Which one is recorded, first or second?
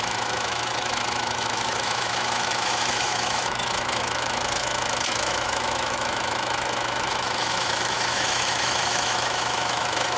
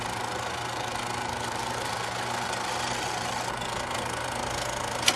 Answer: second